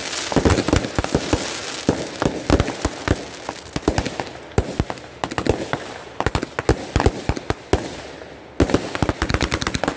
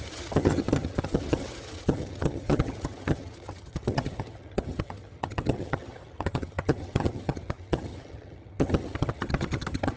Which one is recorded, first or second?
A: first